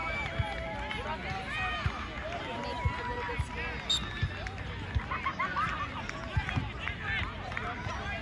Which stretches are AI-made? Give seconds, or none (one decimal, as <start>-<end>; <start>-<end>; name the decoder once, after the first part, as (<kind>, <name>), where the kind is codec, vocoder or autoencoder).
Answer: none